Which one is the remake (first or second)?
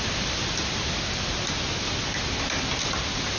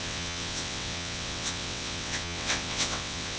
second